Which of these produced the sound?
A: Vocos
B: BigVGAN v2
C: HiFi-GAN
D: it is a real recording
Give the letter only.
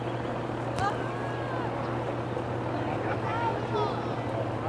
D